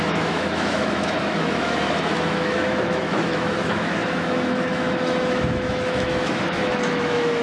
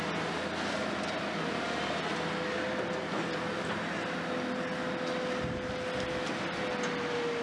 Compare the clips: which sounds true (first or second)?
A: second